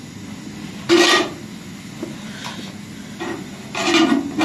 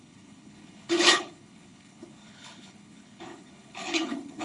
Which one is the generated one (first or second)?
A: second